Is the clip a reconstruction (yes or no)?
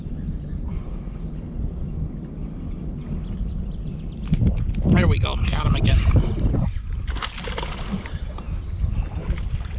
no